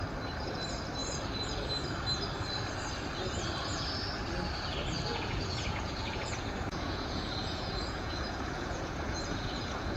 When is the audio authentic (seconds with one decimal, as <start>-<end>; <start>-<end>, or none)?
0.0-5.1